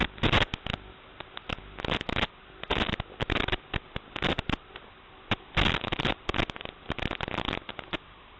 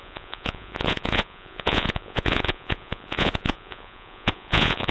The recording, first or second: first